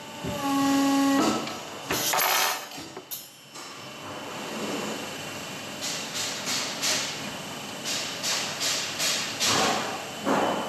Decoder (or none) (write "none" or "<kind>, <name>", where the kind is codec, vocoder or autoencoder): none